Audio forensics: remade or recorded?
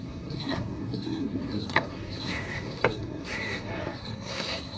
remade